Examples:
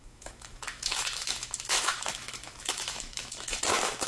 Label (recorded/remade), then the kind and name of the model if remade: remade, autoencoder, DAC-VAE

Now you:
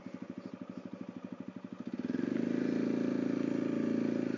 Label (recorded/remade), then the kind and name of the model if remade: recorded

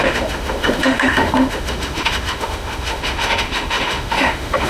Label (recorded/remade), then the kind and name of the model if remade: remade, autoencoder, DAC-VAE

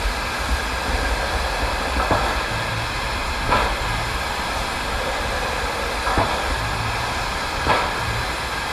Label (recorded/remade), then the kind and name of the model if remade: recorded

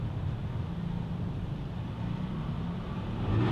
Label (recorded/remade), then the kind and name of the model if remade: recorded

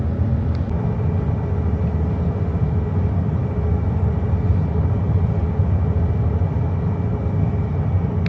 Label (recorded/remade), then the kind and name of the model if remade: recorded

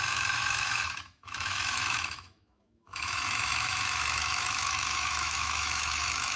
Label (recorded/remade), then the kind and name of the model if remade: remade, autoencoder, DAC-VAE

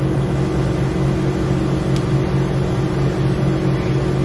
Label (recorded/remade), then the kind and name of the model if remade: recorded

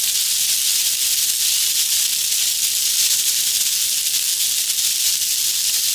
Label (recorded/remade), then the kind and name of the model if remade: recorded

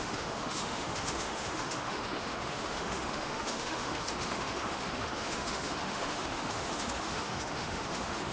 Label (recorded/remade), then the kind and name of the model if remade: remade, autoencoder, DAC-VAE